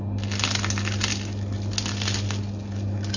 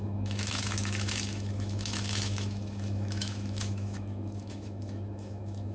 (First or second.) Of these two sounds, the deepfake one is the second